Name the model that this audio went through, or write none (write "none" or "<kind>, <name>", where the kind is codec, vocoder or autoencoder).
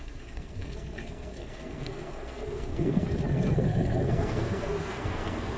codec, SNAC